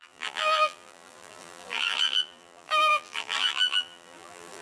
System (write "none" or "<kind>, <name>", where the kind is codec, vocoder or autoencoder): vocoder, BigVGAN v2